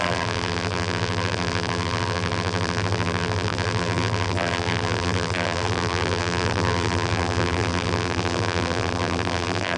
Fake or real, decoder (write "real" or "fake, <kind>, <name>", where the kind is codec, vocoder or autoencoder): fake, vocoder, BigVGAN v2